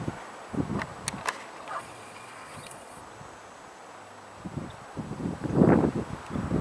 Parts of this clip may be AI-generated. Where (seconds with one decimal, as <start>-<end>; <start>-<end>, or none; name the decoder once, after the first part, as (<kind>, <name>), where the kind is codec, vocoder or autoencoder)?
1.7-3.0 (vocoder, Vocos)